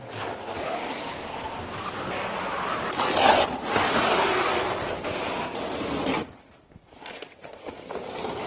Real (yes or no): yes